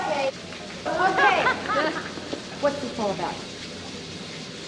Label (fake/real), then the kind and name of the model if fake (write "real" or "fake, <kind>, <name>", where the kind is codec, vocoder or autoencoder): real